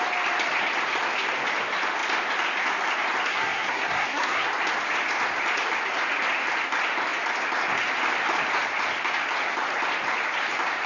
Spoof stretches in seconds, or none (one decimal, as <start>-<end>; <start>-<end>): 3.3-4.5